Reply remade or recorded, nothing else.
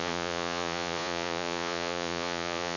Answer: remade